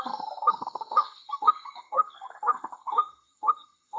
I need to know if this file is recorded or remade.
remade